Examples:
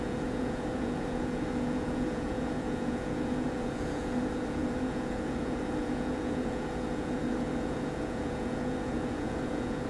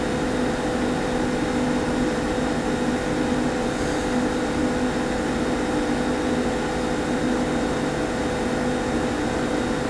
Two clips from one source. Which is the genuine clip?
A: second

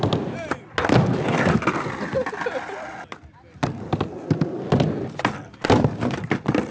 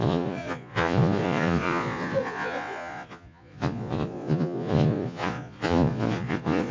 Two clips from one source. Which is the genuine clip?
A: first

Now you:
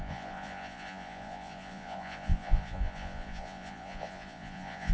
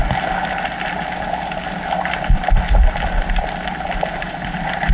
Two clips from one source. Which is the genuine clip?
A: second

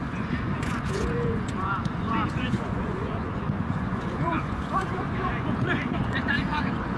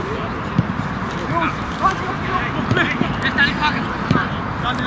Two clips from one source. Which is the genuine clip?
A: second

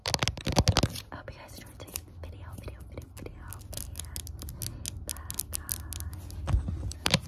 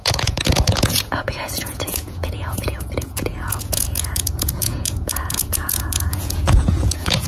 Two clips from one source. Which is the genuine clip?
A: first